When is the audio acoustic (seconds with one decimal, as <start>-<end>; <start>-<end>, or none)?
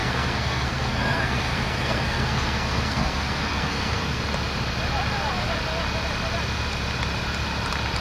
4.2-8.0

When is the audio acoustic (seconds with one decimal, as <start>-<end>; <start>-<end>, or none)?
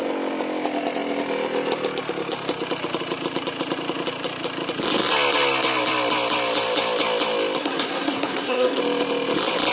0.0-7.6; 8.8-9.7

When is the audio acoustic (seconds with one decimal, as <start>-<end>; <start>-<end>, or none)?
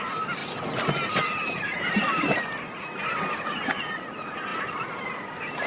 0.0-5.7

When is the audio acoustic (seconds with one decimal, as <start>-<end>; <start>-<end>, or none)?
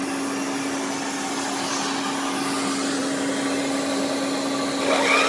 0.0-5.3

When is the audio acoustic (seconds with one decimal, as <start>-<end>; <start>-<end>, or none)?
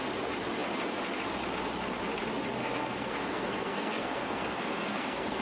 0.0-2.6